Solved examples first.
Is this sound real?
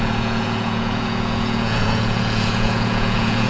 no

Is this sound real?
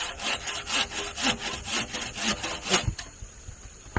yes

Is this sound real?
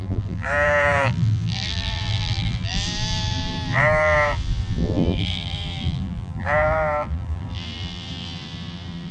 no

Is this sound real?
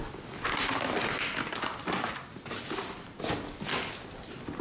yes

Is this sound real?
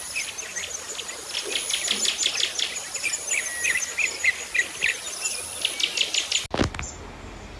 yes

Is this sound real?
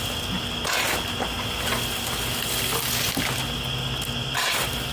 yes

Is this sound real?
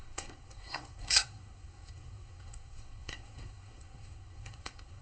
no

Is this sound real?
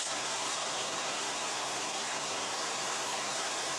no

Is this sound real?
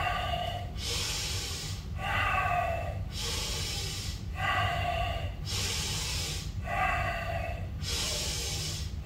yes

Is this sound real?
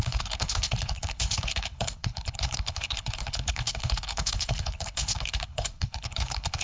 no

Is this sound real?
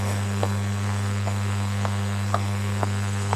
no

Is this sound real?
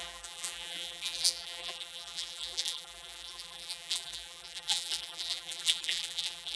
no